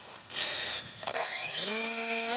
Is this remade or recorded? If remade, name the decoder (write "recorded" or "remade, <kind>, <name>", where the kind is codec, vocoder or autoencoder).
remade, codec, SNAC